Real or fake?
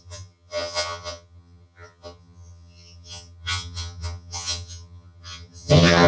fake